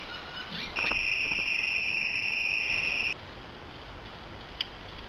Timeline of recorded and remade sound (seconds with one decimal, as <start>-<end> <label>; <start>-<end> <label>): 0.0-1.8 recorded; 1.8-2.6 remade; 2.6-5.1 recorded